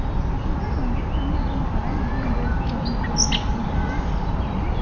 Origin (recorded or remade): recorded